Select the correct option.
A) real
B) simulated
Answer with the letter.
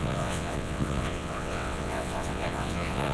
B